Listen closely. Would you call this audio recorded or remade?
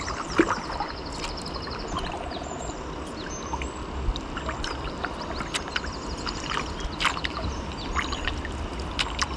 recorded